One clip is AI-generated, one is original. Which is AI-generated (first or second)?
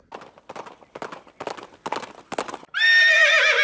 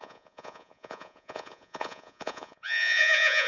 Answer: second